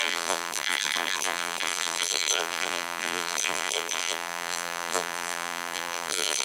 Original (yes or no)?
no